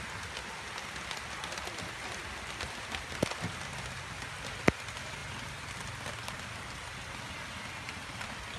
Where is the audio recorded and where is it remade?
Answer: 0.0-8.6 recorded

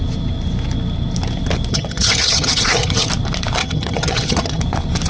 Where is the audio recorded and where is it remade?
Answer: 0.0-1.7 recorded; 1.7-3.1 remade; 3.1-3.6 recorded; 3.6-4.6 remade; 4.6-5.1 recorded

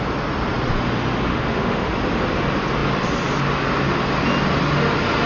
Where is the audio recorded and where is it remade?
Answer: 0.0-1.3 recorded; 1.3-1.9 remade; 1.9-5.3 recorded

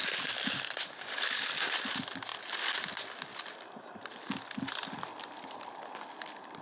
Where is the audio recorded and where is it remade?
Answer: 0.0-1.7 recorded; 1.7-6.6 remade

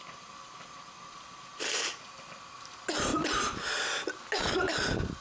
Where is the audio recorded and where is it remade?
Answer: 0.0-5.2 recorded

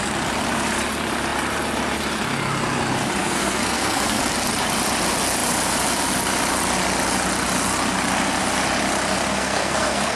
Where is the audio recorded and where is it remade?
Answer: 0.0-3.2 recorded; 3.2-4.2 remade; 4.2-9.3 recorded; 9.3-10.2 remade